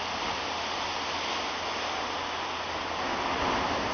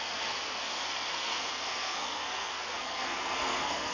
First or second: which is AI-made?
second